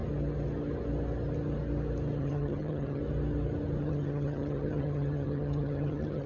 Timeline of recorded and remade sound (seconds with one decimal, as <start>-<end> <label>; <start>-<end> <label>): 0.0-2.2 recorded; 2.2-3.0 remade; 3.0-3.8 recorded; 3.8-6.3 remade

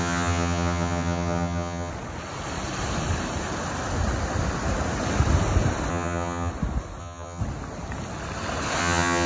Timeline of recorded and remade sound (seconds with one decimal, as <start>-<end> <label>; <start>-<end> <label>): 0.0-1.9 remade; 1.9-5.9 recorded; 5.9-6.5 remade; 6.5-7.0 recorded; 7.0-7.4 remade; 7.4-8.8 recorded; 8.8-9.3 remade

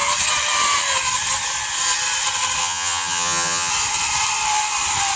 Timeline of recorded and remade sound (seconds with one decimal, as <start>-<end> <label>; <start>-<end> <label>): 0.0-2.6 recorded; 2.6-3.7 remade; 3.7-5.2 recorded

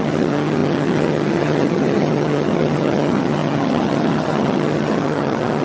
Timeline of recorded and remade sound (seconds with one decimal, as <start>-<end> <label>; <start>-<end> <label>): 0.0-5.6 remade

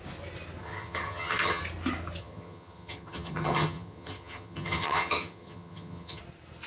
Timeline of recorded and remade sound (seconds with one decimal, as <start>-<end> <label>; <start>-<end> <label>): 0.0-0.6 recorded; 0.6-1.6 remade; 1.6-2.2 recorded; 2.2-6.2 remade; 6.2-6.7 recorded

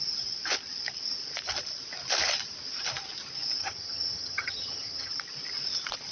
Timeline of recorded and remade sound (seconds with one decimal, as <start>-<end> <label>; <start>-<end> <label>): 0.0-3.6 recorded; 3.6-5.1 remade; 5.1-6.1 recorded